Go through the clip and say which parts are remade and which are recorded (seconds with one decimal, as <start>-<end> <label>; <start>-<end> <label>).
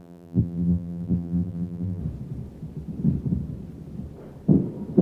0.0-2.0 remade; 2.0-5.0 recorded